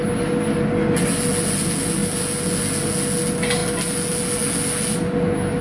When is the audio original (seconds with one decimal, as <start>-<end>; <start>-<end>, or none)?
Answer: 0.0-5.6